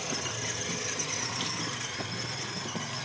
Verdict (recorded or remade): recorded